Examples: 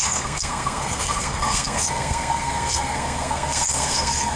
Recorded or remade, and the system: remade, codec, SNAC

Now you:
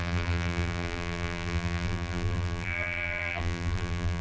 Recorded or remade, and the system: remade, vocoder, BigVGAN v2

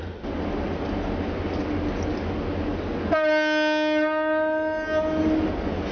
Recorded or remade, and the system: recorded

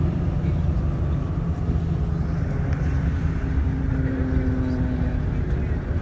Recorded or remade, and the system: recorded